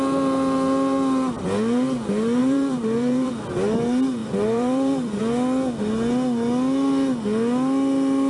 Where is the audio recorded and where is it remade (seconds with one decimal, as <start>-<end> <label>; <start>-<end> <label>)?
0.0-2.4 recorded; 2.4-3.3 remade; 3.3-4.2 recorded; 4.2-5.2 remade; 5.2-8.3 recorded